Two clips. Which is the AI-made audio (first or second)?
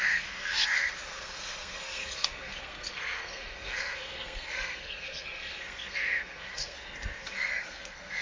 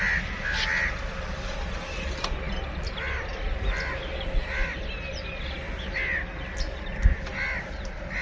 first